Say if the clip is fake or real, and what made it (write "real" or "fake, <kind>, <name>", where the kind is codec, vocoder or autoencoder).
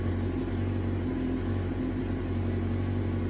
real